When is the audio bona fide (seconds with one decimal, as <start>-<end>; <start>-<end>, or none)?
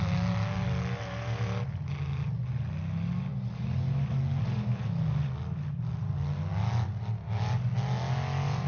0.0-8.7